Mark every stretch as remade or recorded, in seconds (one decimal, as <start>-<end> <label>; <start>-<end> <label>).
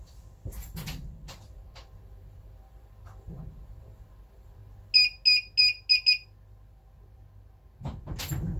0.0-4.6 remade; 4.6-8.2 recorded; 8.2-8.6 remade